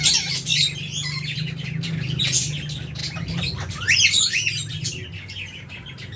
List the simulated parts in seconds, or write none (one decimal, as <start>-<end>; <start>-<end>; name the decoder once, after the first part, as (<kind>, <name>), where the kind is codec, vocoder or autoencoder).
none